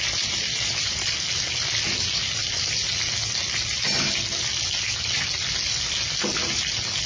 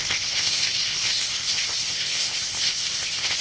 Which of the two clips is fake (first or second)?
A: second